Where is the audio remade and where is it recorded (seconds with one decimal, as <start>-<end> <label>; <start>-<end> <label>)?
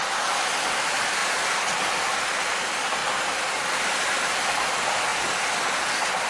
0.0-6.3 recorded